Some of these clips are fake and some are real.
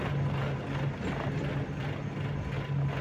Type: real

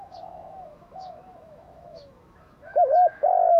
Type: fake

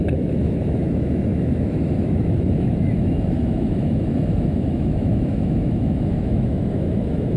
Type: fake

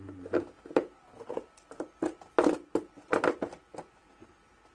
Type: real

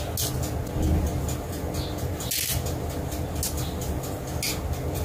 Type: real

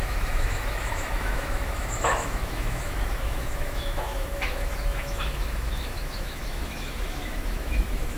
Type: fake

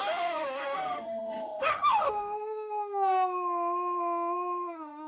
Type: fake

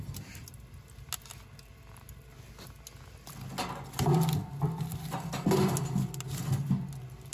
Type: real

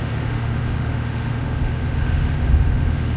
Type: fake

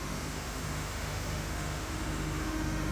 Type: fake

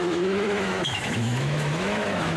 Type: fake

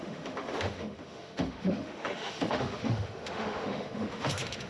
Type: fake